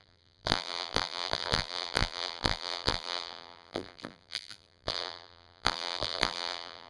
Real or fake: fake